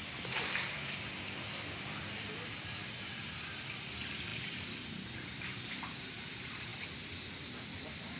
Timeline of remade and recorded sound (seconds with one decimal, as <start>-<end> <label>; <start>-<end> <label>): 0.0-6.7 remade; 6.7-7.6 recorded; 7.6-8.2 remade